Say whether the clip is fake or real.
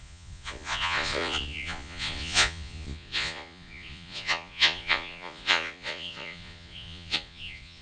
fake